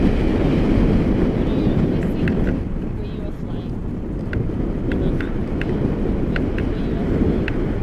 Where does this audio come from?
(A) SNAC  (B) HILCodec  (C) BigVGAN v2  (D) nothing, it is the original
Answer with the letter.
D